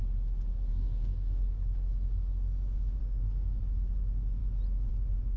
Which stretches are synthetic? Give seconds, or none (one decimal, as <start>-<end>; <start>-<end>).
0.7-1.4; 3.0-3.6